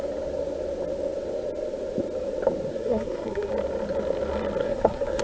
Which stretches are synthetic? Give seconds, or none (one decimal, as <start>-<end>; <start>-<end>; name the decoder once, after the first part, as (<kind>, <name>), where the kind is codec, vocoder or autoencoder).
2.7-3.5 (codec, SNAC); 4.6-5.2